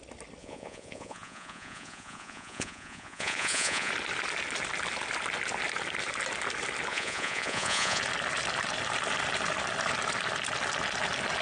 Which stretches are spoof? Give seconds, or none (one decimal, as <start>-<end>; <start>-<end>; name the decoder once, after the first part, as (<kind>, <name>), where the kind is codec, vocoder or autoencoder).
0.4-3.9 (vocoder, Vocos); 6.9-8.0